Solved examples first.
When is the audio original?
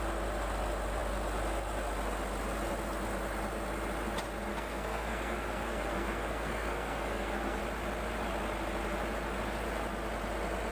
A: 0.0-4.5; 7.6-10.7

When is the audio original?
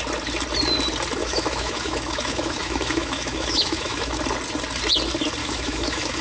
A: 0.0-1.2; 4.2-5.4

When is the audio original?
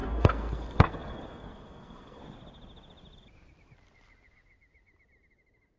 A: 2.2-5.8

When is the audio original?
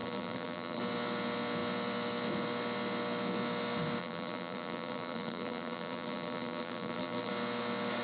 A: 0.8-4.0; 7.3-8.0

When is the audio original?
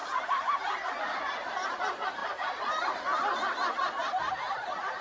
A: 0.9-2.2; 3.0-5.0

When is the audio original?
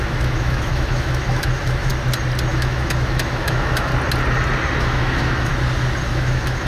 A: 1.9-2.5; 3.9-4.8; 5.5-6.1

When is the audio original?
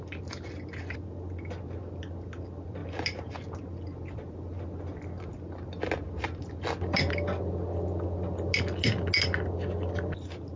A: 0.0-10.6